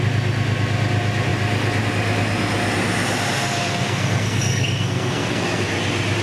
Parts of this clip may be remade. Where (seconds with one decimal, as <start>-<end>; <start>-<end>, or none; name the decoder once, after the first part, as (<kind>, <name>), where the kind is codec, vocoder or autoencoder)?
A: 3.7-5.7 (codec, SNAC)